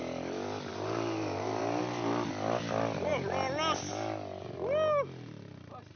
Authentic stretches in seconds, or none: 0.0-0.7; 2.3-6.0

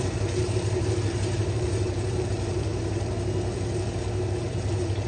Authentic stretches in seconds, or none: 2.7-4.4

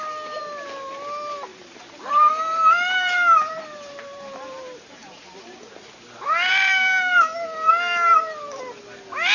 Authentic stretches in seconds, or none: 0.0-1.5; 5.6-6.5; 7.7-8.1; 8.6-9.3

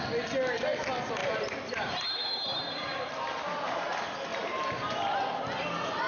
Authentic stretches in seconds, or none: 0.0-1.2; 3.9-4.3; 5.0-6.1

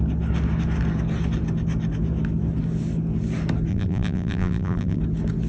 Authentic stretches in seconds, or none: 0.0-3.7; 5.0-5.5

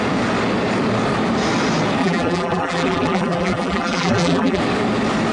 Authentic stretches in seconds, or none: 0.0-2.0; 4.6-5.3